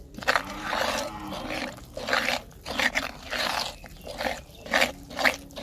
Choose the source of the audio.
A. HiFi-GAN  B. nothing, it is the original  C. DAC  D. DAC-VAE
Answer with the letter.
B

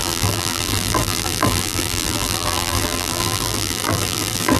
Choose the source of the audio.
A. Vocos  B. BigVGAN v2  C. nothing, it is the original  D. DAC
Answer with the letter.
B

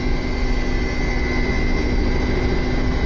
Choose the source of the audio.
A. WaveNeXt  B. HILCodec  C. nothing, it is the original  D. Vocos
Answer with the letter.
C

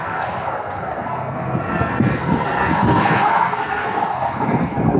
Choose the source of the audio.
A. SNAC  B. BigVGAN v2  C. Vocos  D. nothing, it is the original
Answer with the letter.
A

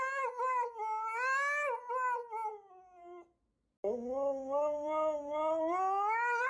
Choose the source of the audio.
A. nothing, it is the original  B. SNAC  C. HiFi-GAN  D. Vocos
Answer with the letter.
A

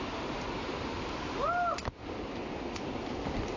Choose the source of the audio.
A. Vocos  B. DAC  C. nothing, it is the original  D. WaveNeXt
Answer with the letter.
C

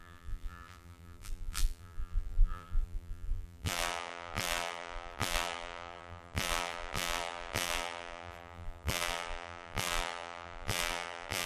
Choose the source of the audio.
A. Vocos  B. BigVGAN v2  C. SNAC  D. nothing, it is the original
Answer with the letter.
B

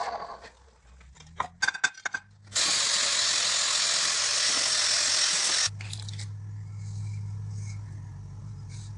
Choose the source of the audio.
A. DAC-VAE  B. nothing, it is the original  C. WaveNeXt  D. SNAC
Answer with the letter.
B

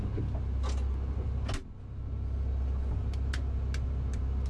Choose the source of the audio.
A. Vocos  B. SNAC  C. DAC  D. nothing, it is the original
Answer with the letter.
D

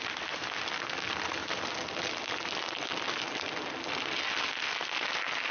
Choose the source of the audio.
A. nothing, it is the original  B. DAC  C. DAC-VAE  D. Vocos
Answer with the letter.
A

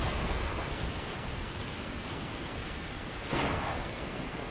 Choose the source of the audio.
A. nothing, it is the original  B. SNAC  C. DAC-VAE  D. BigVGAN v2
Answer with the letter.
B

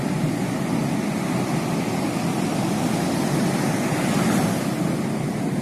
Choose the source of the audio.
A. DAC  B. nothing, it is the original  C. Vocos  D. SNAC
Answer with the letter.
B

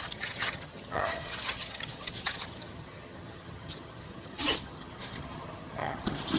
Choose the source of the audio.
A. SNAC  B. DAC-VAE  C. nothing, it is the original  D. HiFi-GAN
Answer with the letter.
D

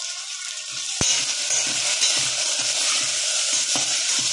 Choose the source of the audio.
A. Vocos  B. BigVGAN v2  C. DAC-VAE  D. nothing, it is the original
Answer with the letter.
D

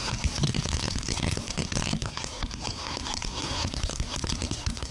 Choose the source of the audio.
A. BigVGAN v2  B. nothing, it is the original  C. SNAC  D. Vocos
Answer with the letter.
C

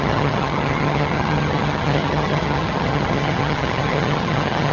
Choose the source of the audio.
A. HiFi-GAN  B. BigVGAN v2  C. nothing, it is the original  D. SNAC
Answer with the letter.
A